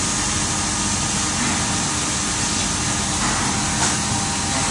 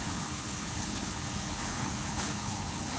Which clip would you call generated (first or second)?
second